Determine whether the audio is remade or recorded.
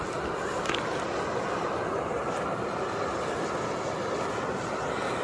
recorded